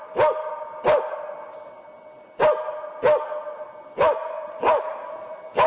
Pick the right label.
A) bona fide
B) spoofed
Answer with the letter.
A